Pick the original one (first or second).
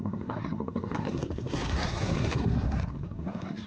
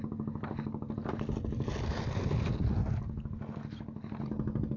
second